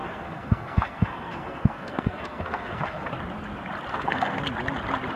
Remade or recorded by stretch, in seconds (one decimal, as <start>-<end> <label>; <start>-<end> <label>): 0.0-3.1 remade; 3.1-3.9 recorded; 3.9-4.4 remade; 4.4-5.2 recorded